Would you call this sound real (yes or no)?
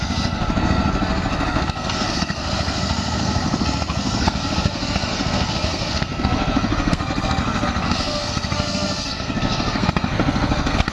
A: no